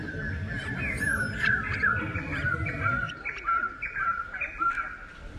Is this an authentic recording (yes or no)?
yes